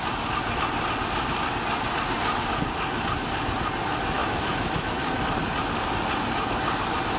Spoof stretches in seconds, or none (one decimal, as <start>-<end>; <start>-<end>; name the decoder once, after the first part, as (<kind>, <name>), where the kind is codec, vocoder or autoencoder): 4.2-5.2 (autoencoder, DAC-VAE)